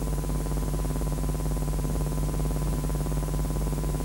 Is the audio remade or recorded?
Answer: recorded